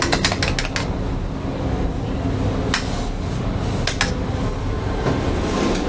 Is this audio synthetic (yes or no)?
no